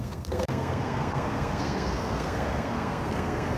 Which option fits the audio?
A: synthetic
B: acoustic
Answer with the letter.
A